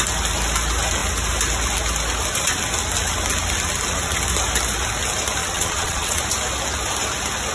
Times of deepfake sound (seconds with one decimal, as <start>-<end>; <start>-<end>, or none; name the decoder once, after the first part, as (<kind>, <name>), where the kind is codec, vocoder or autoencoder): 5.4-6.2 (vocoder, WaveNeXt)

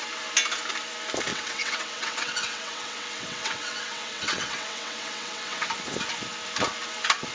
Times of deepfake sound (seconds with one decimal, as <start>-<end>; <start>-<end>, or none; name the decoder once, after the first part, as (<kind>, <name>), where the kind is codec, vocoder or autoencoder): 1.3-5.7 (vocoder, WaveNeXt)

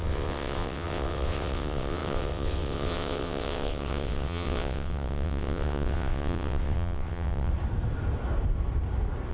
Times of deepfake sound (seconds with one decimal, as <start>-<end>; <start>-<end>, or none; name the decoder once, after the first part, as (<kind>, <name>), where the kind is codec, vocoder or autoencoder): 0.0-7.5 (vocoder, WaveNeXt)

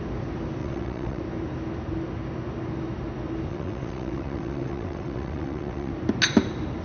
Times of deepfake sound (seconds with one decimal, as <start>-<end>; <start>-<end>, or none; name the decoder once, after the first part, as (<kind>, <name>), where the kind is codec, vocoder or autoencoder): 0.6-1.2 (vocoder, WaveNeXt); 3.5-5.9

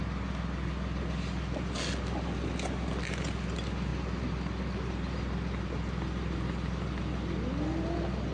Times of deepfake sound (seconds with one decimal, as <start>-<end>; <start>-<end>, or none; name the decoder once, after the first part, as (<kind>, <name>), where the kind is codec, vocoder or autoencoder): none